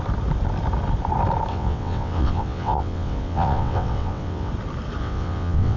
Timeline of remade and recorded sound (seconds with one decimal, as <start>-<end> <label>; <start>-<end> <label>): 0.0-1.5 recorded; 1.5-4.5 remade; 4.5-5.0 recorded; 5.0-5.8 remade